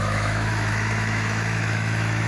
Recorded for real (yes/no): no